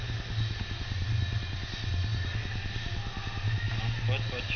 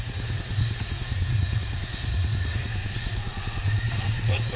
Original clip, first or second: first